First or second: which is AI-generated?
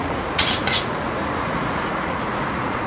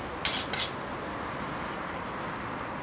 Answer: first